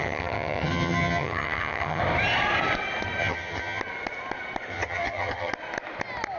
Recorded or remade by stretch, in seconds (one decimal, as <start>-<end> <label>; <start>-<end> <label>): 0.0-2.0 remade; 2.0-3.2 recorded; 3.2-3.8 remade; 3.8-4.7 recorded; 4.7-5.5 remade; 5.5-6.4 recorded